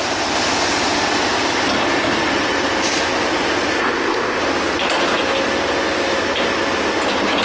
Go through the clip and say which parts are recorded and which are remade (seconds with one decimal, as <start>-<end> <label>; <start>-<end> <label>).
0.0-3.8 recorded; 3.8-4.4 remade; 4.4-7.4 recorded